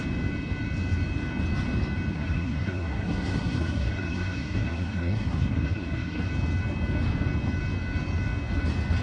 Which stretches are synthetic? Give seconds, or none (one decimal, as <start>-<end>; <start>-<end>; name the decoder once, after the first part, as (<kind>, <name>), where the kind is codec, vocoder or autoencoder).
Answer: 2.1-6.3 (codec, SNAC)